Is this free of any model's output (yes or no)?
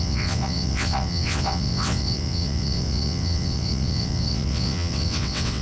no